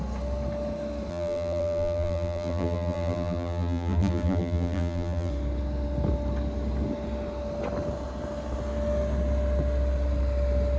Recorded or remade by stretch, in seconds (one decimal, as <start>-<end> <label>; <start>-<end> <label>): 0.0-1.1 recorded; 1.1-5.3 remade; 5.3-10.8 recorded